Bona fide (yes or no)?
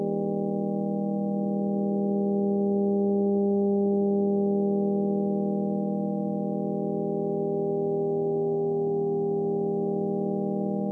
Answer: yes